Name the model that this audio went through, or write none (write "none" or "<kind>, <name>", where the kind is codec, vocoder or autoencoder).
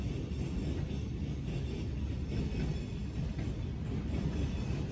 none